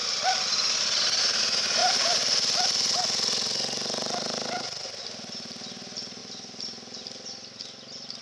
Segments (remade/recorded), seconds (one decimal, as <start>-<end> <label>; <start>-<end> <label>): 0.0-1.8 recorded; 1.8-5.0 remade; 5.0-6.2 recorded; 6.2-8.2 remade